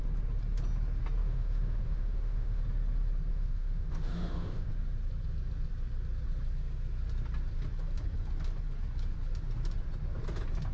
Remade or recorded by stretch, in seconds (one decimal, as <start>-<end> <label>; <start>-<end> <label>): 0.0-1.2 recorded; 1.2-2.6 remade; 2.6-3.3 recorded; 3.3-4.7 remade; 4.7-10.7 recorded